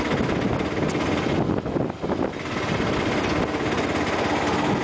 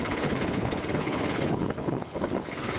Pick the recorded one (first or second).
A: first